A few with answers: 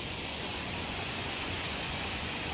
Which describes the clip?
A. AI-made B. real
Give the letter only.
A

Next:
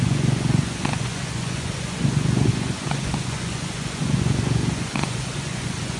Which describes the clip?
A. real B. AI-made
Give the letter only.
B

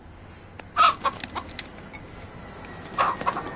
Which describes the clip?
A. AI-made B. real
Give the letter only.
B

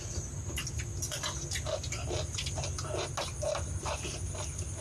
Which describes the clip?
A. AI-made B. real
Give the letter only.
B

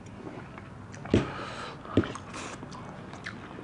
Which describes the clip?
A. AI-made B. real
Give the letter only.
B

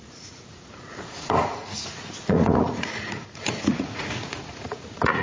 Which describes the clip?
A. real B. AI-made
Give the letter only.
B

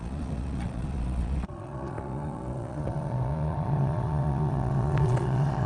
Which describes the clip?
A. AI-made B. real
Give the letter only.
A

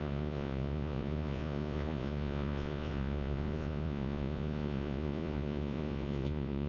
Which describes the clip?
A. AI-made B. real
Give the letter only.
A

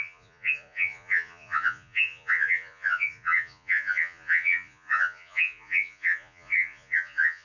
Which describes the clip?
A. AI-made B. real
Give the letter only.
A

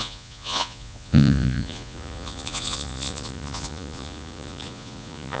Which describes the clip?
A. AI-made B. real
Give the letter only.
A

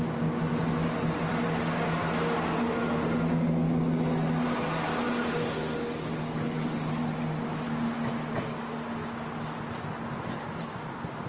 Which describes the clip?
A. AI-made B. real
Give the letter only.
B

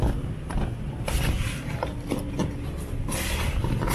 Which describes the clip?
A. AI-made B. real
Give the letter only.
B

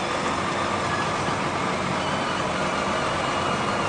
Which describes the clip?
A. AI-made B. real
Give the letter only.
B